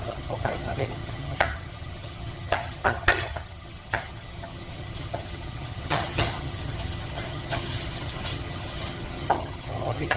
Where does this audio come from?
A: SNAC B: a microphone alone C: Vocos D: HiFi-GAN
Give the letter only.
D